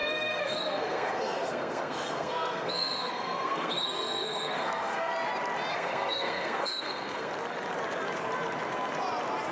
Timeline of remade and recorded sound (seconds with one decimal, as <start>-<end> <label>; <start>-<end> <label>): 0.0-5.1 remade; 5.1-5.7 recorded; 5.7-7.3 remade; 7.3-9.5 recorded

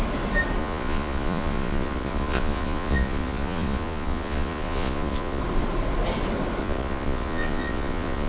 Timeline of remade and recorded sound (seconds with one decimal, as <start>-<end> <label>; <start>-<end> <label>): 0.0-0.6 recorded; 0.6-5.4 remade; 5.4-6.6 recorded; 6.6-8.3 remade

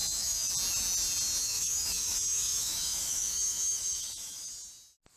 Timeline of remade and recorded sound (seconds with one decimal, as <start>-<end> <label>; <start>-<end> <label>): 0.0-0.5 remade; 0.5-1.4 recorded; 1.4-4.5 remade; 4.5-5.2 recorded

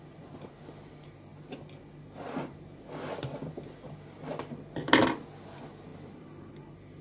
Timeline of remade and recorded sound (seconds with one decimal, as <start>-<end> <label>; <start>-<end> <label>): 0.0-5.9 recorded; 5.9-6.5 remade; 6.5-7.0 recorded

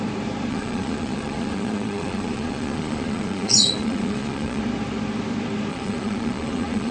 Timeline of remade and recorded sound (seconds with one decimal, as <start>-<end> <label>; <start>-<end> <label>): 0.0-0.5 recorded; 0.5-4.6 remade; 4.6-5.7 recorded; 5.7-6.9 remade